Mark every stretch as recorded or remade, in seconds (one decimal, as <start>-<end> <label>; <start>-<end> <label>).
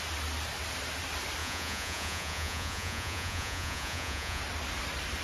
0.0-1.4 recorded; 1.4-4.4 remade; 4.4-5.2 recorded